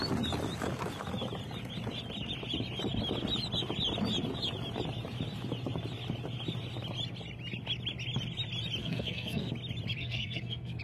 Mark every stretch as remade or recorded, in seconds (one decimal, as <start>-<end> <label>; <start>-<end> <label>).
0.0-8.8 recorded; 8.8-9.5 remade; 9.5-10.0 recorded; 10.0-10.8 remade